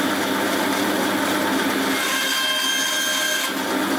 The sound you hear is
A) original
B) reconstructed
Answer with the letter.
A